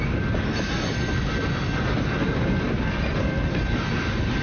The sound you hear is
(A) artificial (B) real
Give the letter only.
B